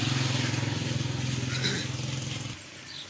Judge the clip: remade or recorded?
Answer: recorded